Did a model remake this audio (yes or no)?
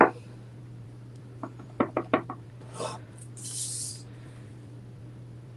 yes